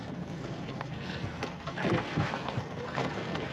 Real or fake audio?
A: fake